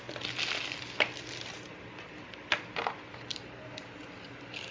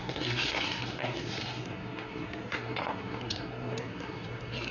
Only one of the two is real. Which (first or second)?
first